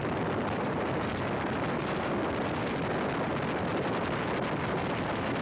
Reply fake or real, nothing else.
real